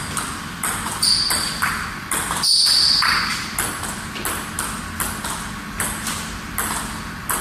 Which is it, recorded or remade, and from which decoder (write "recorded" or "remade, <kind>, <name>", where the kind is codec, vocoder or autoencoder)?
recorded